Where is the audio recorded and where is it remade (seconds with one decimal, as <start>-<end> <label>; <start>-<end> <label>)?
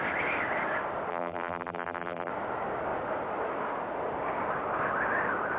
0.0-1.1 recorded; 1.1-2.3 remade; 2.3-5.6 recorded